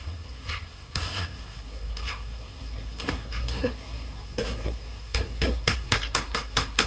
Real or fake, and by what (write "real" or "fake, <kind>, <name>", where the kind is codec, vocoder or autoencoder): fake, codec, SNAC